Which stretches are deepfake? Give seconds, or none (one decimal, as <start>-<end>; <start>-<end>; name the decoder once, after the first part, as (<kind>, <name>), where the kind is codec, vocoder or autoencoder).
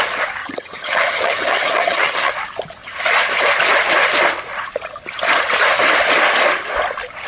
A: 0.4-2.3 (vocoder, HiFi-GAN)